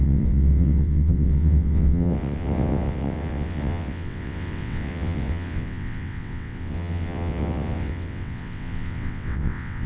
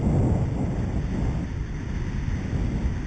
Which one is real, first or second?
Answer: second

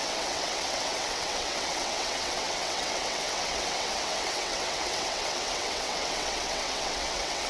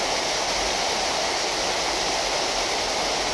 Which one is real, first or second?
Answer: second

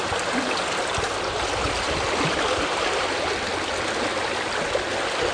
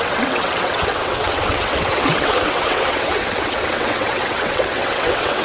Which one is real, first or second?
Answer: first